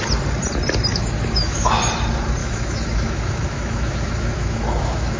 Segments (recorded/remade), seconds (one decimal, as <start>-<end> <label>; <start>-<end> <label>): 0.0-0.9 recorded; 0.9-1.7 remade; 1.7-2.4 recorded; 2.4-5.2 remade